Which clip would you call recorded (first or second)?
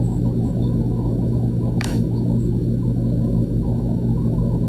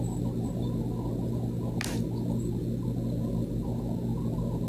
second